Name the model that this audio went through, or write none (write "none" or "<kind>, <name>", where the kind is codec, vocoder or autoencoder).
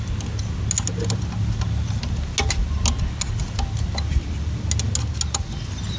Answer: none